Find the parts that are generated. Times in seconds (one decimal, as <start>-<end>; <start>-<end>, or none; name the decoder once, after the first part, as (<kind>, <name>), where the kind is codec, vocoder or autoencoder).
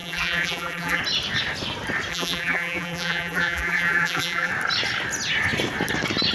0.0-1.0 (vocoder, BigVGAN v2); 2.1-4.5